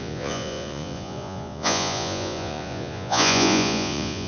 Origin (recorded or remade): remade